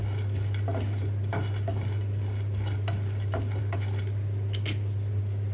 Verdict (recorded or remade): recorded